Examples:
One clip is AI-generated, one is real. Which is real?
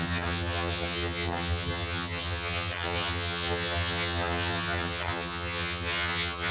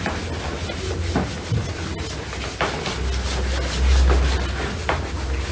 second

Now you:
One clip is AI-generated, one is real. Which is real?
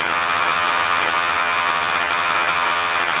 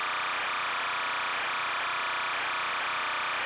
second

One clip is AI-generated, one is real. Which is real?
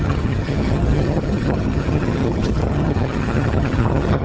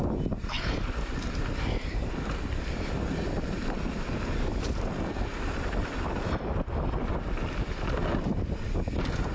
second